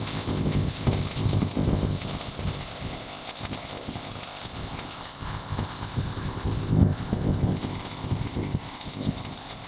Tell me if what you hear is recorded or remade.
remade